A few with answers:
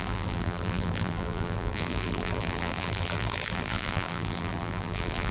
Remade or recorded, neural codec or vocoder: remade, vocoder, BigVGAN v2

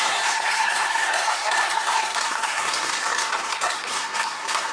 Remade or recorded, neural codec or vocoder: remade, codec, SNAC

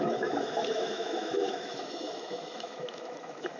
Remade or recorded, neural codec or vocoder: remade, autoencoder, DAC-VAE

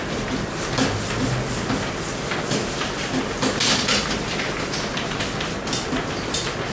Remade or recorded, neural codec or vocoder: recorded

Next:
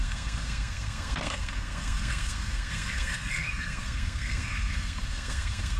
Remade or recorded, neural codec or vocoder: remade, codec, SNAC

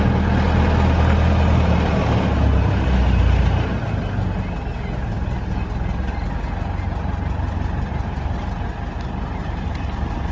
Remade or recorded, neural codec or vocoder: recorded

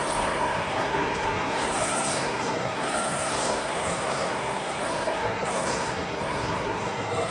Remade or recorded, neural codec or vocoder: remade, codec, SNAC